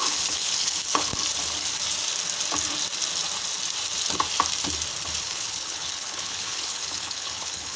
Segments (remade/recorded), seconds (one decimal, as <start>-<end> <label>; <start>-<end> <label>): 0.0-1.1 remade; 1.1-5.2 recorded; 5.2-7.8 remade